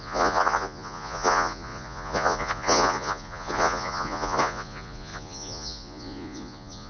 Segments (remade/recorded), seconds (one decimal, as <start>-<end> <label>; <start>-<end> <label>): 0.0-6.9 remade